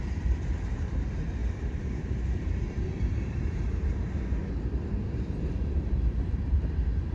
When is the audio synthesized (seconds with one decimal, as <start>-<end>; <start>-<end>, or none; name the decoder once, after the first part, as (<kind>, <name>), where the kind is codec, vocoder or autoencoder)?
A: 0.0-7.1 (vocoder, BigVGAN v2)